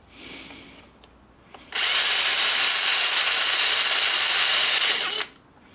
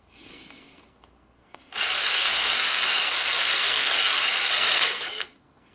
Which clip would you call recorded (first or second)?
first